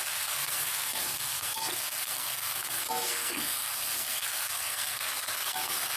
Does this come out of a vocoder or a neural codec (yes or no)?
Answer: yes